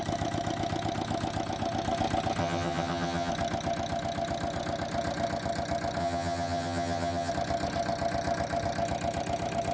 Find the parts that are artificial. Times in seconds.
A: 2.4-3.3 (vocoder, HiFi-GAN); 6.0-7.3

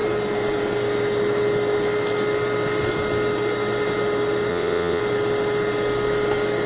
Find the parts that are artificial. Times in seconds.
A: 4.5-5.0 (vocoder, WaveNeXt)

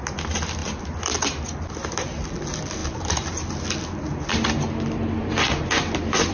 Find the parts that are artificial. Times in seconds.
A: 0.6-1.6 (vocoder, BigVGAN v2)

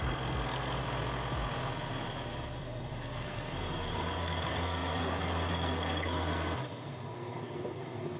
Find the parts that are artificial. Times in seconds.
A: 0.0-0.8 (codec, SNAC); 2.9-8.2

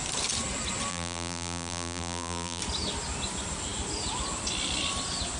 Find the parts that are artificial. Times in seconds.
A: 0.9-2.6 (vocoder, BigVGAN v2)

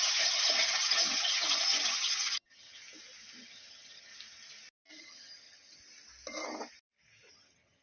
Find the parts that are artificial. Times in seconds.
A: 0.0-2.8 (vocoder, HiFi-GAN); 3.4-4.1; 5.0-5.8; 7.3-7.8